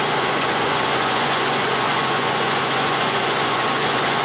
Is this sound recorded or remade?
remade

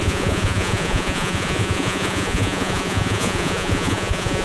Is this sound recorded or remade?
remade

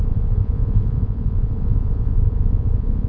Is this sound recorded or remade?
remade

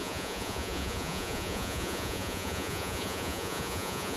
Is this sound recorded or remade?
remade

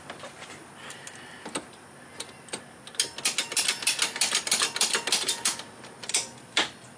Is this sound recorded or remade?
recorded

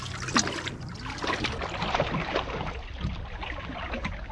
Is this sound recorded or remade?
recorded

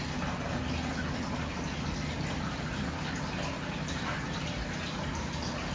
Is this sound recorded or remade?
recorded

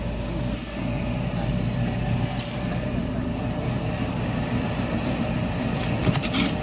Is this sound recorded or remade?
recorded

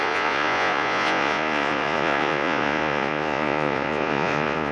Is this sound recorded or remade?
remade